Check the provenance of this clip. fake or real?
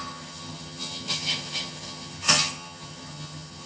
fake